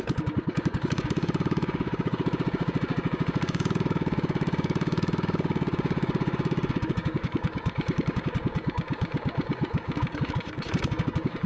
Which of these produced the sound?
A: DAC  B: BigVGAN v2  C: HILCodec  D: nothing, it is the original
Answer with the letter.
A